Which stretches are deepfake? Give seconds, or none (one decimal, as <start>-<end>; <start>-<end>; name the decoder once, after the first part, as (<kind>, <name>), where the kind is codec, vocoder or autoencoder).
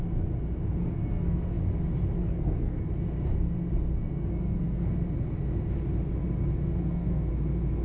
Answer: 0.8-1.6 (codec, SNAC); 2.2-2.9; 4.1-4.9; 6.6-7.3